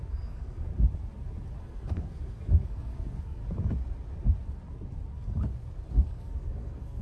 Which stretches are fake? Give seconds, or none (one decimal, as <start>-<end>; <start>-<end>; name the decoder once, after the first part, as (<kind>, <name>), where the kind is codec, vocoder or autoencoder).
0.0-0.7 (codec, SNAC); 1.6-3.4; 5.9-7.0